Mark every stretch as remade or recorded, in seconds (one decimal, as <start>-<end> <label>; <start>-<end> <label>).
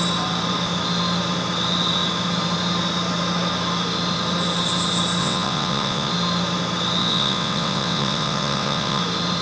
0.0-5.2 recorded; 5.2-6.1 remade; 6.1-7.0 recorded; 7.0-9.0 remade; 9.0-9.4 recorded